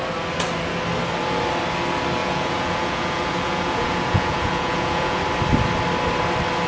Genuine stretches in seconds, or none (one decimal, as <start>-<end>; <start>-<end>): 0.0-2.2; 5.2-6.7